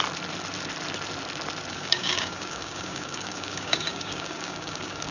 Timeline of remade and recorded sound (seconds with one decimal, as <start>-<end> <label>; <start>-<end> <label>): 0.0-1.7 recorded; 1.7-5.1 remade